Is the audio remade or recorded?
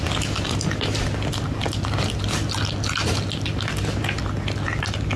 recorded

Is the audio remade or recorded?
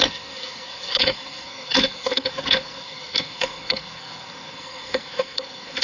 remade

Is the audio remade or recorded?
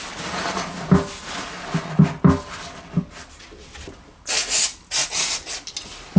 recorded